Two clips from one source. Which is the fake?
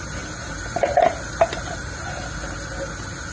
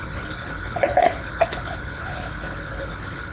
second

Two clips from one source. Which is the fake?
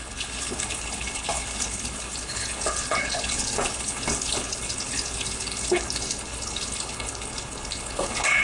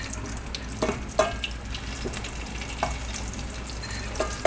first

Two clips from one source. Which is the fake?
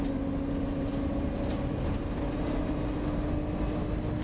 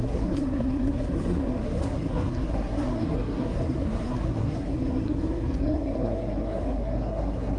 second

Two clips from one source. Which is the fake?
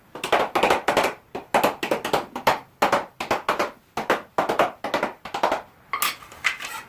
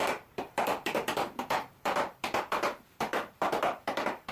second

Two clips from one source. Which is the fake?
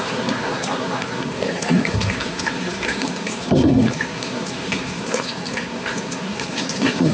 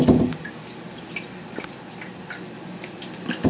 first